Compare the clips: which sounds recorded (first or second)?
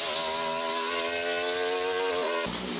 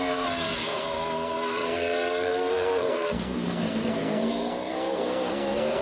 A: first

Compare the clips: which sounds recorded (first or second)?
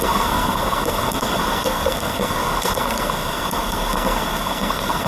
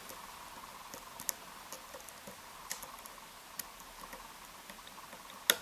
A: second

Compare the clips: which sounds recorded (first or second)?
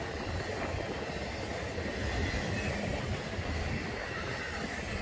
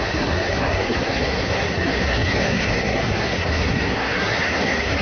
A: first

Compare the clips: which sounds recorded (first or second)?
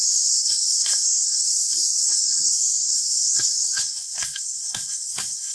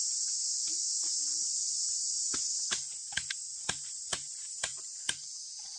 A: second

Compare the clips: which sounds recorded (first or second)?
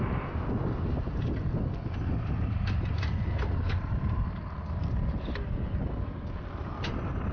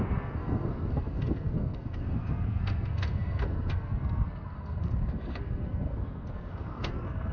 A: first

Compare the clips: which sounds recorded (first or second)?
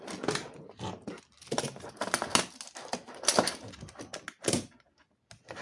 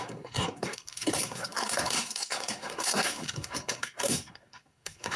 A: first